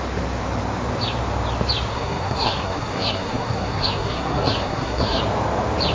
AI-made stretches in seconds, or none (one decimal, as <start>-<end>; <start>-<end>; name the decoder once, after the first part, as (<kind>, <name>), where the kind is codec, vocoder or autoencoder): 1.9-5.2 (codec, SNAC)